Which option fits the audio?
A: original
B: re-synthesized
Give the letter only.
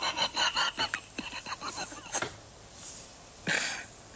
A